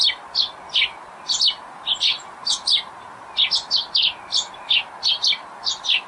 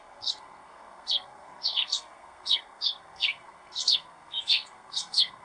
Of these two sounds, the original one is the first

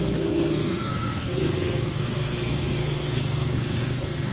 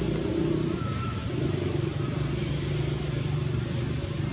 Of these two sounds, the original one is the second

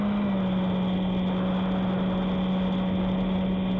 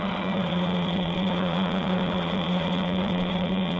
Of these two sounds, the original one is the first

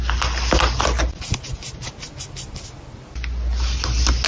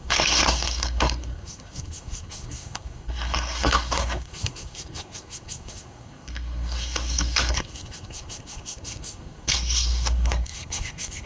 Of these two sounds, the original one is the first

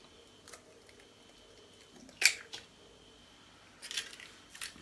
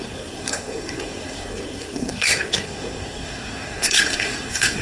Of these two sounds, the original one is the first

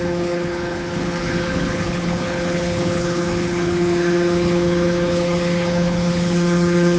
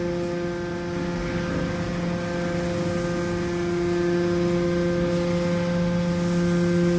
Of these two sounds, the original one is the second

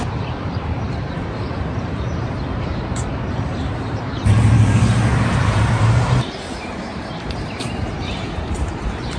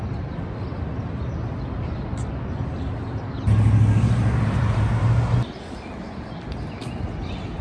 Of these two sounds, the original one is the second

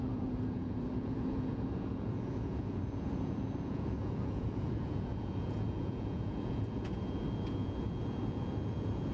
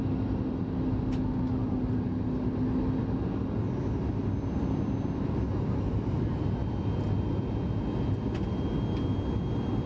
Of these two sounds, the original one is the second